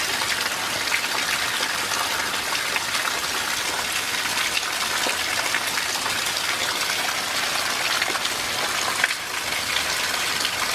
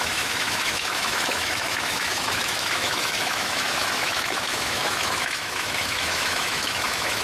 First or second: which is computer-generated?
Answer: second